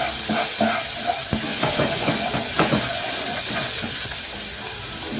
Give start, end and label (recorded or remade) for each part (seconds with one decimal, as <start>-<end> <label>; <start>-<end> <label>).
0.0-1.5 recorded; 1.5-4.2 remade; 4.2-5.2 recorded

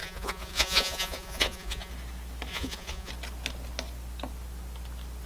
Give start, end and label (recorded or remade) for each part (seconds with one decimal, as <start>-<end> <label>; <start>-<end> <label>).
0.0-1.9 remade; 1.9-2.5 recorded; 2.5-3.1 remade; 3.1-5.3 recorded

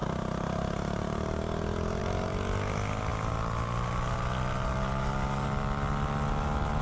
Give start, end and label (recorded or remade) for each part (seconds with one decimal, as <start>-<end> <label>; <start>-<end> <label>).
0.0-6.8 recorded

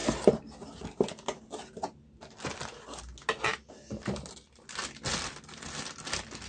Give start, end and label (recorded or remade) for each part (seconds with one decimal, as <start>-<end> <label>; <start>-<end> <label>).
0.0-6.5 recorded

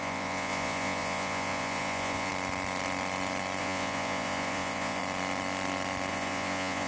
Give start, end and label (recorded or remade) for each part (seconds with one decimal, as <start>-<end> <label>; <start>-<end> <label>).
0.0-2.3 remade; 2.3-3.6 recorded; 3.6-5.0 remade; 5.0-6.1 recorded; 6.1-6.9 remade